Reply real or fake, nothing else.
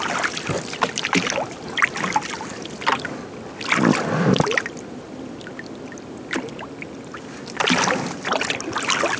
real